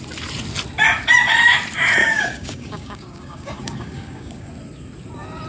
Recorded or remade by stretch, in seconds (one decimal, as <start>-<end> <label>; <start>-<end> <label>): 0.0-2.0 recorded; 2.0-4.5 remade; 4.5-5.5 recorded